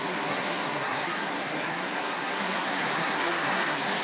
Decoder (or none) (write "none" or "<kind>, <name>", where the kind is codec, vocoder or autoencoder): codec, SNAC